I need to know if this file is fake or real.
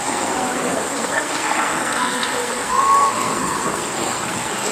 fake